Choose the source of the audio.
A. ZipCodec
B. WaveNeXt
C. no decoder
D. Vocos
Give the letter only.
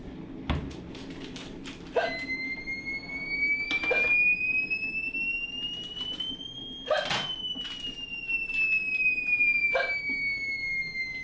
C